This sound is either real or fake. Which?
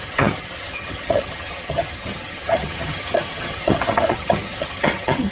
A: fake